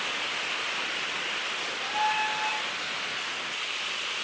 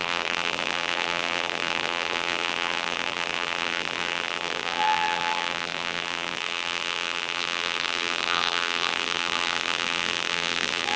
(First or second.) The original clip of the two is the first